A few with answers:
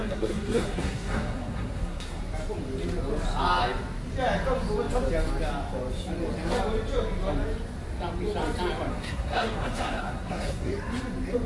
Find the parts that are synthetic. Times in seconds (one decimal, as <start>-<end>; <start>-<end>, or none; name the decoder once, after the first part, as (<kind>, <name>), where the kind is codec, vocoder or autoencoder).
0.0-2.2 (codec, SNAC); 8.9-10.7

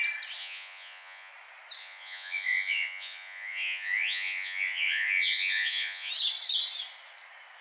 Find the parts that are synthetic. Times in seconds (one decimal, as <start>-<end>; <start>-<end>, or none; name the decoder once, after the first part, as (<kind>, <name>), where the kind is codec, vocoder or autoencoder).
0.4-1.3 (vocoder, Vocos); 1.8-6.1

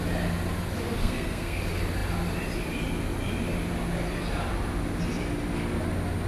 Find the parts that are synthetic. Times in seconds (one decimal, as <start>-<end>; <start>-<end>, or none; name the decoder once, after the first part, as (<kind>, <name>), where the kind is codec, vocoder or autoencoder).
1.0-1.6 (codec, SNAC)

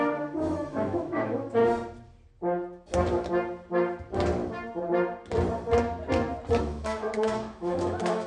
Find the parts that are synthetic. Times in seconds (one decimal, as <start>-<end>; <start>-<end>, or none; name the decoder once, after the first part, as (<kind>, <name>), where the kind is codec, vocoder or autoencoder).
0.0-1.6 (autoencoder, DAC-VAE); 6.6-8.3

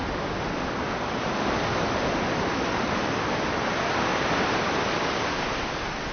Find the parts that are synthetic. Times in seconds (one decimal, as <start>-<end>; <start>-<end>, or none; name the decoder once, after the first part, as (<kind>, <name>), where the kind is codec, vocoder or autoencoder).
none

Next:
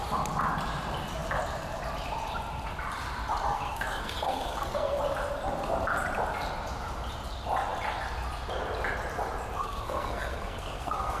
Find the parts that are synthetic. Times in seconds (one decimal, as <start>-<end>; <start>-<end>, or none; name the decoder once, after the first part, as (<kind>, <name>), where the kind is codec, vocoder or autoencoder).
3.5-5.0 (codec, SNAC); 9.6-11.2

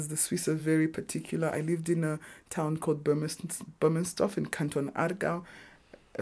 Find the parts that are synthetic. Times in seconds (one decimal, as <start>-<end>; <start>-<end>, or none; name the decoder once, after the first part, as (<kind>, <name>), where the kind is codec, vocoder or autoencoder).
none